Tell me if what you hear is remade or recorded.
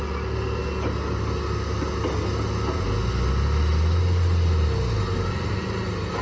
recorded